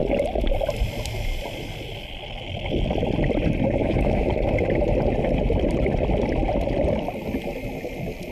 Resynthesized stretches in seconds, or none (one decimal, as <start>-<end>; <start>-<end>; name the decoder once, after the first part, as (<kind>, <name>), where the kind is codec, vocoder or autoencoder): 3.8-4.3 (autoencoder, DAC-VAE)